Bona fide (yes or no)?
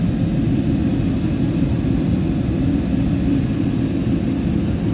yes